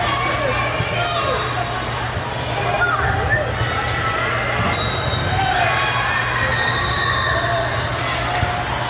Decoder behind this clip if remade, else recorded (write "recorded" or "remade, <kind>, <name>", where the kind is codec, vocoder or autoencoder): recorded